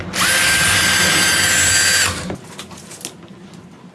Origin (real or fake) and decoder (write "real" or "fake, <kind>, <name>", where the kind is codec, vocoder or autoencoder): real